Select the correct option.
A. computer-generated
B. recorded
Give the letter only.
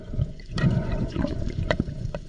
A